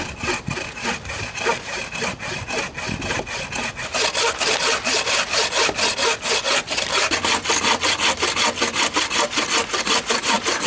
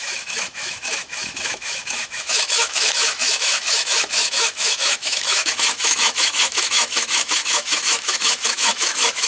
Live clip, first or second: first